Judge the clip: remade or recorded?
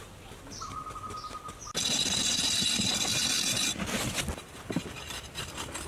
recorded